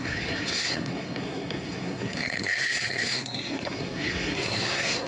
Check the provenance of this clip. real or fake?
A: fake